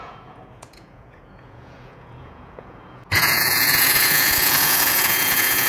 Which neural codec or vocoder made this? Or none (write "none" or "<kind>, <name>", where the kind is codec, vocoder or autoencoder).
vocoder, Vocos